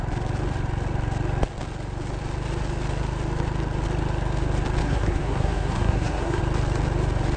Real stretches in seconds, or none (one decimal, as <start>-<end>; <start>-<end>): 0.0-4.8; 6.4-7.4